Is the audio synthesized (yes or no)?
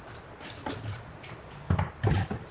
no